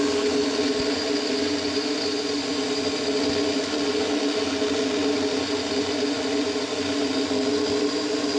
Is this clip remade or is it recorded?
recorded